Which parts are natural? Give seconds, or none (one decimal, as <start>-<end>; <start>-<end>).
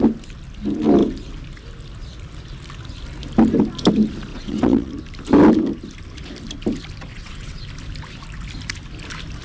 0.0-4.3; 4.9-7.1; 7.6-9.4